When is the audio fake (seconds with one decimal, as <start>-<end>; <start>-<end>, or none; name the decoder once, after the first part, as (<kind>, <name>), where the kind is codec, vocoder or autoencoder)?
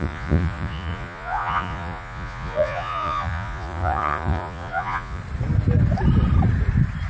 0.0-5.2 (vocoder, Vocos)